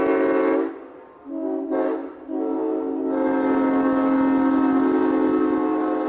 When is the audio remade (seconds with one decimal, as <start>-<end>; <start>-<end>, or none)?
none